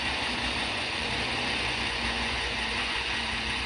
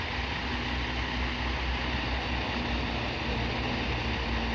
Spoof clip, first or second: first